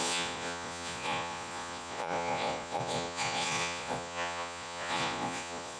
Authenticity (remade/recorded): remade